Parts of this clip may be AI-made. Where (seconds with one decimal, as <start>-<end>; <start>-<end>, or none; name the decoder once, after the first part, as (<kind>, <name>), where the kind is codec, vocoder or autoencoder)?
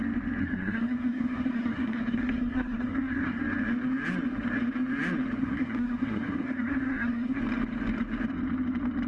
0.4-3.4 (codec, SNAC); 5.4-7.4